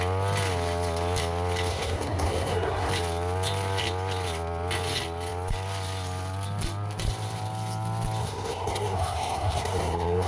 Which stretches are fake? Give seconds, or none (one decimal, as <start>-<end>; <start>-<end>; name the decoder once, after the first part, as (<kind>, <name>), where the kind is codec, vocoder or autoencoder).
1.7-2.9 (codec, SNAC); 8.2-10.3

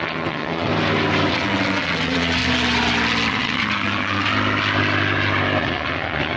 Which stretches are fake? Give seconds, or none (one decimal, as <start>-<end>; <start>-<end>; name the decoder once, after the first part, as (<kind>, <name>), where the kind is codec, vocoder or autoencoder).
0.0-0.7 (vocoder, WaveNeXt); 1.3-2.4; 3.3-4.3; 5.6-6.4

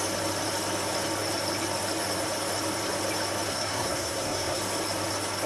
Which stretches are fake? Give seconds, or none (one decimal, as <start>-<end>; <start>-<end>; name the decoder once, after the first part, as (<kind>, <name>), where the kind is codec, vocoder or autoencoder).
3.5-4.6 (codec, SNAC)

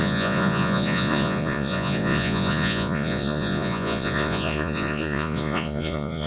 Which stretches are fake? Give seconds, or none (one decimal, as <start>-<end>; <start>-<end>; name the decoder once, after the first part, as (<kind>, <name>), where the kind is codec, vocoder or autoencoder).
0.0-6.3 (vocoder, Vocos)

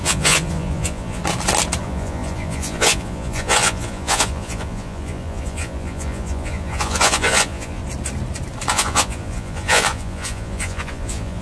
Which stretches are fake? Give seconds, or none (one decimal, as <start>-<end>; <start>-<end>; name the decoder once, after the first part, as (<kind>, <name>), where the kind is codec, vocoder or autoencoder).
0.0-1.2 (vocoder, Vocos); 1.8-7.8; 8.7-11.4

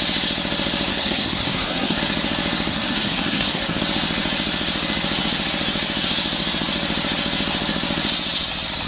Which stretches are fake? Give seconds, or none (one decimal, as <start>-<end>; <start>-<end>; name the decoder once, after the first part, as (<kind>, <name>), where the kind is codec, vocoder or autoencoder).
0.9-2.0 (codec, SNAC); 2.7-3.8

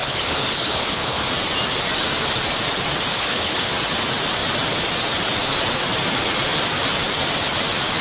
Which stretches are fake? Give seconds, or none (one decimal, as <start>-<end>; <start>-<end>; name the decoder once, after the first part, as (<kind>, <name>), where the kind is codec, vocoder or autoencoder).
0.0-1.3 (codec, HILCodec); 3.1-3.7